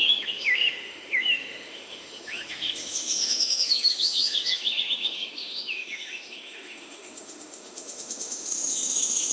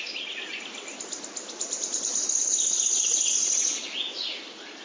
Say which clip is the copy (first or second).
first